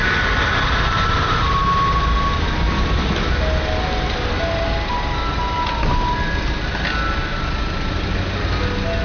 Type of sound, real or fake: real